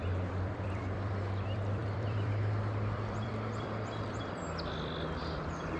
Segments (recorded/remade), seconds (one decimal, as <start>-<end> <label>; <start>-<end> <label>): 0.0-5.8 remade